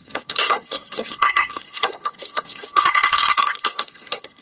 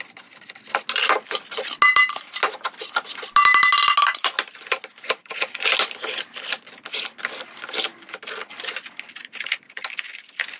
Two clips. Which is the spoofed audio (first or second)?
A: first